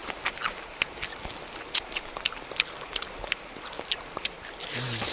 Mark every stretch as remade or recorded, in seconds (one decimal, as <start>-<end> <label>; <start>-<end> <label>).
0.0-5.1 recorded